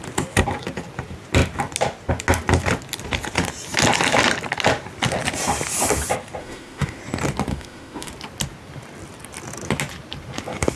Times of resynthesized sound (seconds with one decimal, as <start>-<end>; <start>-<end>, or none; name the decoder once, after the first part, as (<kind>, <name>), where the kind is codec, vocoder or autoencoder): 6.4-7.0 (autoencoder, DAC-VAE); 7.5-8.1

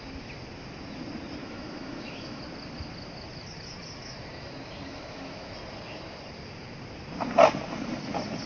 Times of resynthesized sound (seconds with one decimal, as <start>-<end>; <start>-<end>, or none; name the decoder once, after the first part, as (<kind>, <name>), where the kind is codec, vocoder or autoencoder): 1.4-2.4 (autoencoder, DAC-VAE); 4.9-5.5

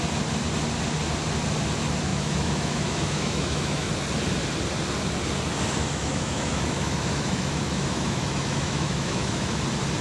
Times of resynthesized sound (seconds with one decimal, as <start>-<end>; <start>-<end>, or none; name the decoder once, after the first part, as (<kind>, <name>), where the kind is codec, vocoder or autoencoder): 2.1-3.9 (autoencoder, DAC-VAE); 5.8-9.6

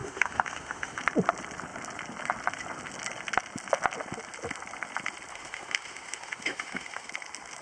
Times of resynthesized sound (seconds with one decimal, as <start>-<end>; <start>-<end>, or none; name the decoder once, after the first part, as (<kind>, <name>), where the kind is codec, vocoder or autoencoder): 0.0-1.0 (autoencoder, DAC-VAE); 5.3-7.1

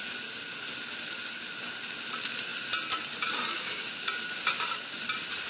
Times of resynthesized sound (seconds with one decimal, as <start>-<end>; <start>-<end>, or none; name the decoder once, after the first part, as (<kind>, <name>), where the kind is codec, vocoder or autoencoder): none